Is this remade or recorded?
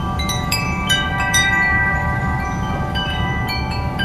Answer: remade